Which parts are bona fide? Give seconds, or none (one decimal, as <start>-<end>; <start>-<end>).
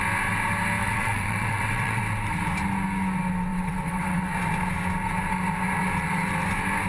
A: 0.0-0.8; 2.0-3.5; 4.3-6.9